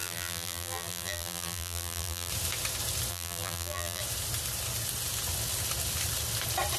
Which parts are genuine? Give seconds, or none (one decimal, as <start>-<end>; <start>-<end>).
2.3-3.1; 4.0-6.8

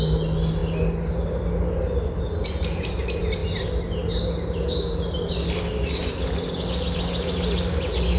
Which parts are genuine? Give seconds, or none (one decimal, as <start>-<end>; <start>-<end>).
0.0-8.2